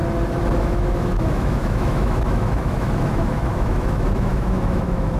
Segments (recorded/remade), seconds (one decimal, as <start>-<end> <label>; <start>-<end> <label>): 0.0-0.6 recorded; 0.6-5.2 remade